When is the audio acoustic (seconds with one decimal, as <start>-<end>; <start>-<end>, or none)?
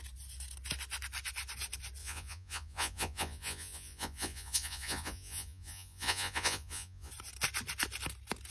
0.0-2.0; 7.1-8.5